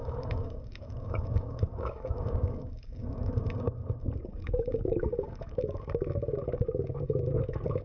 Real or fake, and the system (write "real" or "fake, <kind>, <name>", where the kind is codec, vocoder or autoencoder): fake, codec, DAC